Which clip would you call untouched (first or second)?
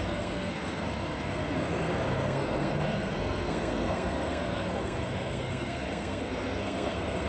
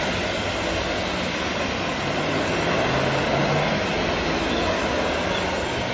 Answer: second